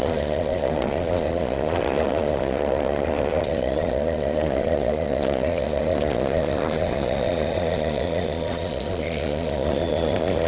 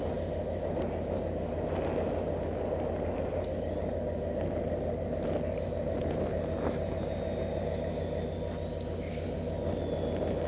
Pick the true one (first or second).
second